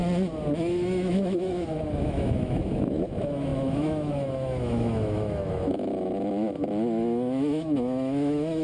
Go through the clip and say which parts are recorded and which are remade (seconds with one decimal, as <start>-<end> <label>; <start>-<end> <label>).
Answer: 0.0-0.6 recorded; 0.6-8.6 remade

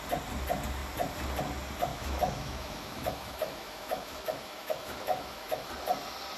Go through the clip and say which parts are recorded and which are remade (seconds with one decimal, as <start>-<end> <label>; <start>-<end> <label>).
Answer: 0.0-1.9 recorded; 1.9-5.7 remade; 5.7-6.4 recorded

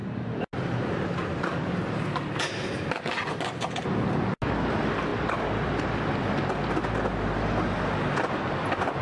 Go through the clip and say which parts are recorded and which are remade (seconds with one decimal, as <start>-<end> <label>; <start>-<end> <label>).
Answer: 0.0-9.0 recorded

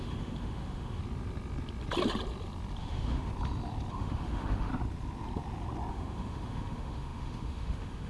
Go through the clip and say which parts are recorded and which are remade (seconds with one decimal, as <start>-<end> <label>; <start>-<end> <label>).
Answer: 0.0-1.0 remade; 1.0-2.8 recorded; 2.8-3.3 remade; 3.3-3.9 recorded; 3.9-4.7 remade; 4.7-5.9 recorded; 5.9-8.1 remade

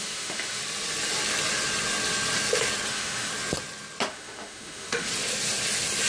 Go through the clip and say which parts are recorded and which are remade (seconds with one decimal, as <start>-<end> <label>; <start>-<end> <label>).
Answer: 0.0-0.6 remade; 0.6-2.9 recorded; 2.9-3.3 remade; 3.3-4.1 recorded; 4.1-5.1 remade; 5.1-6.1 recorded

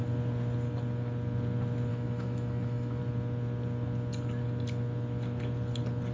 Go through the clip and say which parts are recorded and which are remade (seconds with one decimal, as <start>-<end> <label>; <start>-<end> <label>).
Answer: 0.0-1.9 recorded; 1.9-3.0 remade; 3.0-6.1 recorded

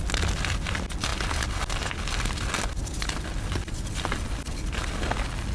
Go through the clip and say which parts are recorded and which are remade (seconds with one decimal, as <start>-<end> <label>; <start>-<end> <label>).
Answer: 0.0-5.5 recorded

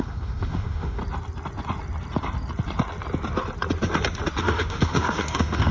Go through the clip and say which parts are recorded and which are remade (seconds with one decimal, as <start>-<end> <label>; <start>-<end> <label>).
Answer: 0.0-1.0 remade; 1.0-4.4 recorded; 4.4-5.7 remade